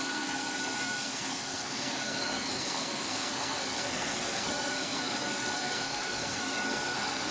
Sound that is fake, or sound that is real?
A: fake